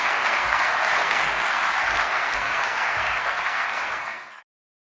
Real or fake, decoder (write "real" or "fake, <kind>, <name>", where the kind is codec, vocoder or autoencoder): fake, codec, SNAC